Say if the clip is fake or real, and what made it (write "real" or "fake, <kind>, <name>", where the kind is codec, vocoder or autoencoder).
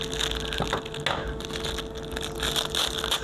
real